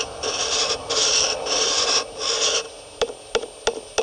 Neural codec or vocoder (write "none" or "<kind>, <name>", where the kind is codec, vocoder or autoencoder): none